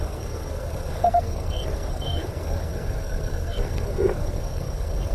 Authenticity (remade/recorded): remade